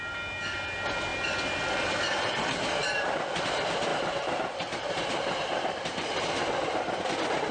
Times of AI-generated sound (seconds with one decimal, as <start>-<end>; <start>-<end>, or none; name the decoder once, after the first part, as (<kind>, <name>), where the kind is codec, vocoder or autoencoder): 3.9-6.4 (vocoder, BigVGAN v2)